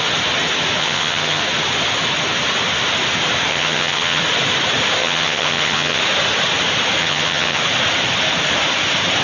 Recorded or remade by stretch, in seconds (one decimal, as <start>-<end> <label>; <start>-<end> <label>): 0.0-0.8 recorded; 0.8-1.4 remade; 1.4-3.5 recorded; 3.5-4.2 remade; 4.2-5.0 recorded; 5.0-6.0 remade; 6.0-7.0 recorded; 7.0-7.6 remade; 7.6-9.2 recorded